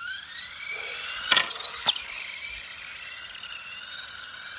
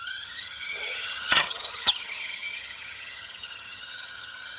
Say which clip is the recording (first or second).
first